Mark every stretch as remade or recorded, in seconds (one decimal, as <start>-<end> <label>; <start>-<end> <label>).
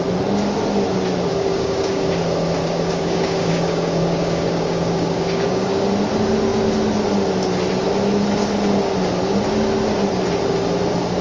0.0-1.3 recorded; 1.3-2.1 remade; 2.1-2.6 recorded; 2.6-5.8 remade; 5.8-11.2 recorded